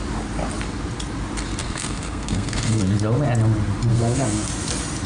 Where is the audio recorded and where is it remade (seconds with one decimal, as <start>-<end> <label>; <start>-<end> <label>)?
0.0-1.6 recorded; 1.6-2.8 remade; 2.8-3.9 recorded; 3.9-4.5 remade; 4.5-5.1 recorded